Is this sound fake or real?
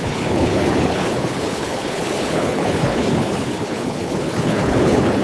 fake